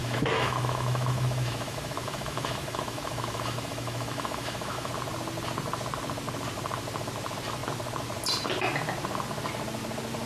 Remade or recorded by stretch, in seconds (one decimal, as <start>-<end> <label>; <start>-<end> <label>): 0.0-4.9 remade; 4.9-10.3 recorded

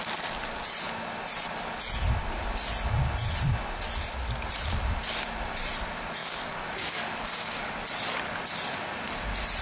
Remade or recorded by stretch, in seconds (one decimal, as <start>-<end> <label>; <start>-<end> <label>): 0.0-6.2 recorded; 6.2-7.7 remade; 7.7-9.6 recorded